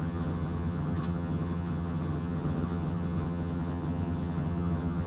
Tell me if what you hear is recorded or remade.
remade